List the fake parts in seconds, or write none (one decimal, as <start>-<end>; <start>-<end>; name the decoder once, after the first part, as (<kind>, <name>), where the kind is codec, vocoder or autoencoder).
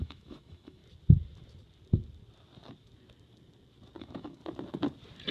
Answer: 0.0-0.8 (autoencoder, DAC-VAE); 4.0-4.4